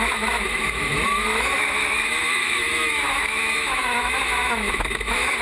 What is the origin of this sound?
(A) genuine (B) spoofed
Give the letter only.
B